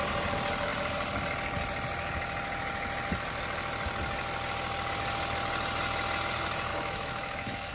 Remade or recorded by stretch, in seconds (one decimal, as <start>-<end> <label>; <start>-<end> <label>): 0.0-6.7 recorded; 6.7-7.7 remade